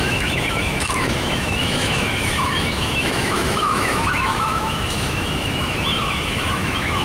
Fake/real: fake